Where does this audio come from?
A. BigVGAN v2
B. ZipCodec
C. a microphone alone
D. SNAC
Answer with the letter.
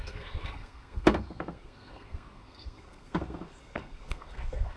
D